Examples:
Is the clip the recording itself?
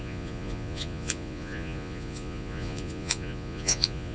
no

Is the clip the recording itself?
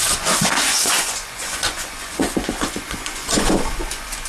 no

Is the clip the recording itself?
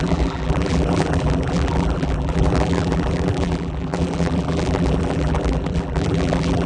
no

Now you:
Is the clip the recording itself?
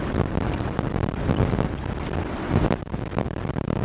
yes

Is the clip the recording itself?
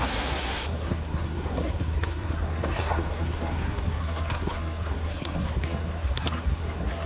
no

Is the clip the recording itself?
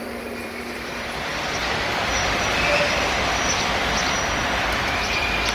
no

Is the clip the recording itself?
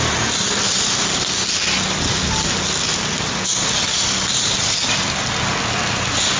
yes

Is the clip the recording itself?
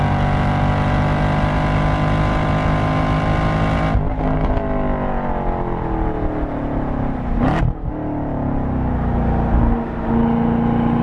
yes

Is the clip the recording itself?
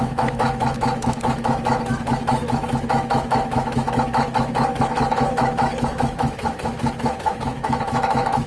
no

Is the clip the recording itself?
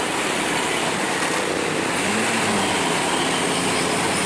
yes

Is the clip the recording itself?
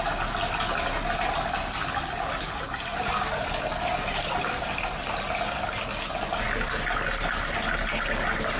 yes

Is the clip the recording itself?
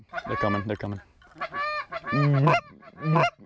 yes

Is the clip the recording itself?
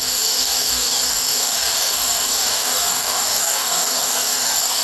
no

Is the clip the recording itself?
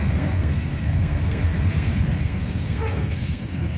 no